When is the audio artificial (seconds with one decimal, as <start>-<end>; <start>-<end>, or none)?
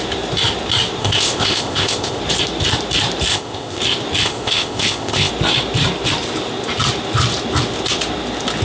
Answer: 1.0-2.2; 3.3-3.8; 4.2-5.3